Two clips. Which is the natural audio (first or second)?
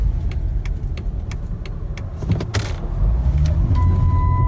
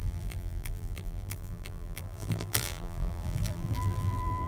first